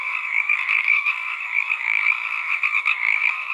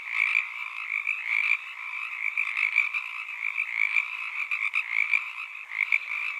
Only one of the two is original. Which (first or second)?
second